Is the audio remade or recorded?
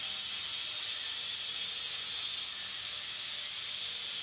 recorded